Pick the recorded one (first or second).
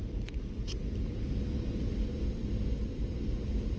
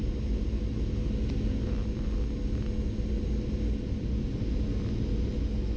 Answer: second